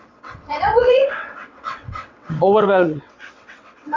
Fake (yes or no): yes